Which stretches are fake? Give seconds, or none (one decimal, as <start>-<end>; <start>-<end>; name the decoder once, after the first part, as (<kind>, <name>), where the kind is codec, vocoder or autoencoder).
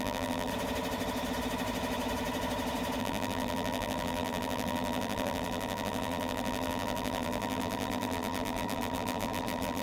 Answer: 0.0-0.5 (vocoder, BigVGAN v2); 3.0-9.8